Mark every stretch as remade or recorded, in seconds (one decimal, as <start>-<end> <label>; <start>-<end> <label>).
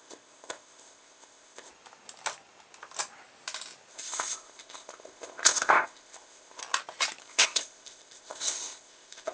0.0-1.7 remade; 1.7-3.9 recorded; 3.9-6.6 remade; 6.6-7.2 recorded; 7.2-9.3 remade